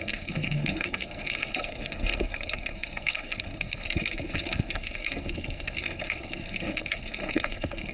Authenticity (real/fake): fake